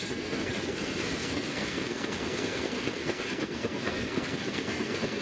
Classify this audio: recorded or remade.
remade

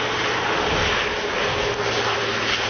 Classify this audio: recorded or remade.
recorded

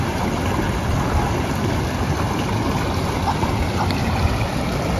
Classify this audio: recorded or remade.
recorded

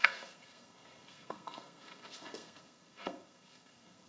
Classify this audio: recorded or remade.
remade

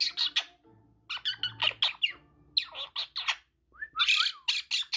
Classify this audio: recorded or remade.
recorded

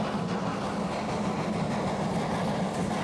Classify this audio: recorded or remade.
recorded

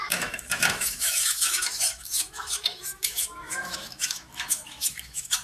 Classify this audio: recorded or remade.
remade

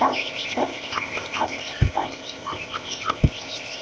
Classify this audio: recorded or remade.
remade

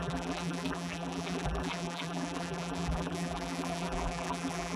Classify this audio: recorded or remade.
remade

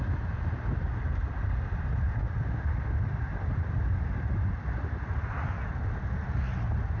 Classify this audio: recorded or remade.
recorded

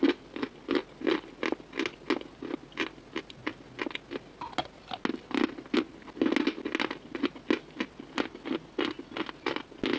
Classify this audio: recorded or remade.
recorded